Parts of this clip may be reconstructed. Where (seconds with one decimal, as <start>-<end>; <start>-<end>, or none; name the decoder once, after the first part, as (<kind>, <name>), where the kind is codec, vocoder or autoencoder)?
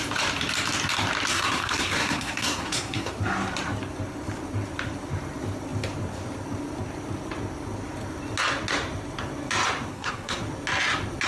1.3-3.1 (codec, SNAC); 9.9-10.4